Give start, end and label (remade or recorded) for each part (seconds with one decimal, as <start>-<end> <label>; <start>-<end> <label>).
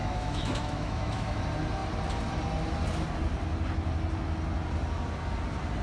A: 0.0-1.4 remade; 1.4-5.8 recorded